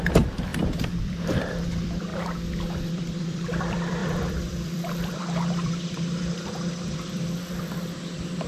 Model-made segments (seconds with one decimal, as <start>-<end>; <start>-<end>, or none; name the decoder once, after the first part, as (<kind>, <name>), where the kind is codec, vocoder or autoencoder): 0.0-2.1 (vocoder, BigVGAN v2); 2.9-8.5